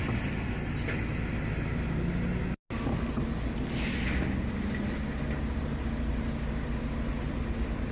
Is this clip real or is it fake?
real